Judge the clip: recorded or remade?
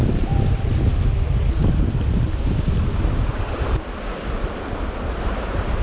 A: remade